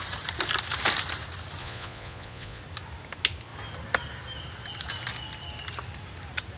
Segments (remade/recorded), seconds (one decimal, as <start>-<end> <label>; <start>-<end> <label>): 0.0-1.6 recorded; 1.6-2.6 remade; 2.6-6.6 recorded